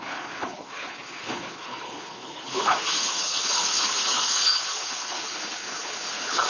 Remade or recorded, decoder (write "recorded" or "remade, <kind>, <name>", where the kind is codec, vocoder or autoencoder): remade, codec, HILCodec